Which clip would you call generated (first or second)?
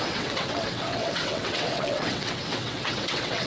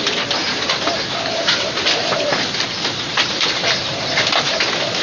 first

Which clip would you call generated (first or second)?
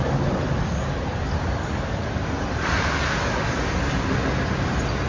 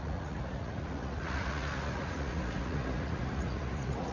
second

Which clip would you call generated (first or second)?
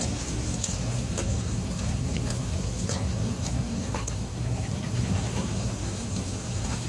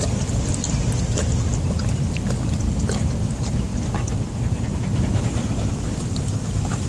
first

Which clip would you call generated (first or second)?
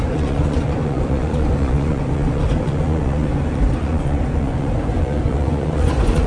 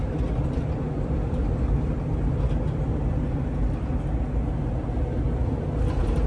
first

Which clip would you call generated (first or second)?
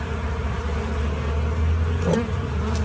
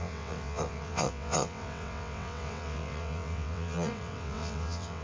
second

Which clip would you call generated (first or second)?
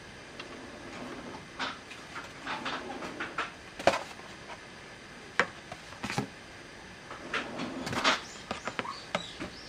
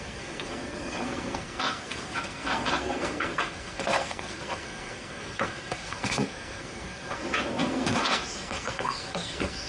second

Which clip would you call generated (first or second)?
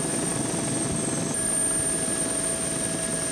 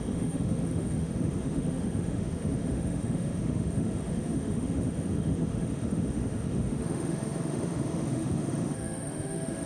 second